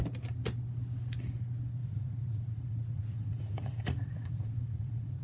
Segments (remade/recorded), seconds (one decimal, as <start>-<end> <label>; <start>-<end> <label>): 0.0-1.8 recorded; 1.8-5.2 remade